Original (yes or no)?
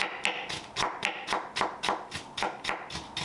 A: yes